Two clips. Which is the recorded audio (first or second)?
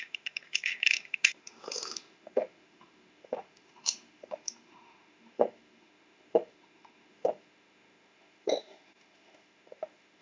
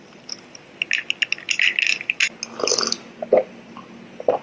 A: second